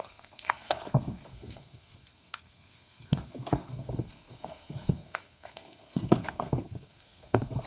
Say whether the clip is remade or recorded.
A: remade